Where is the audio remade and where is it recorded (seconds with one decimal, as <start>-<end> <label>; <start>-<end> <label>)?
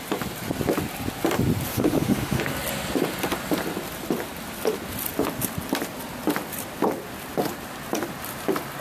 0.0-1.7 recorded; 1.7-2.4 remade; 2.4-8.8 recorded